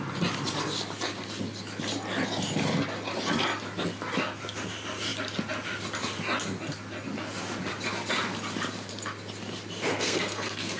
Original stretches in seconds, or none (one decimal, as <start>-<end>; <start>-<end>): 0.0-9.9